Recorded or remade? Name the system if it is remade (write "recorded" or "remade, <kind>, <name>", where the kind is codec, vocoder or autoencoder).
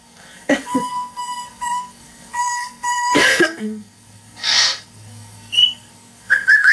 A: remade, codec, SNAC